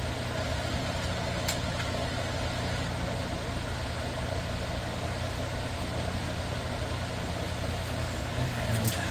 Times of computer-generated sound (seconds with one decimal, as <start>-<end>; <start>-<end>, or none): 8.0-8.7